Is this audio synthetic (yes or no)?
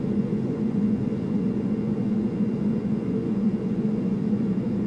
yes